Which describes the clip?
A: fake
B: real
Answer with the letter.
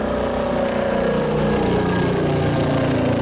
B